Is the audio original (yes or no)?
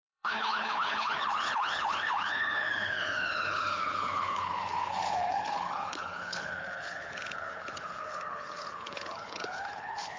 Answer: no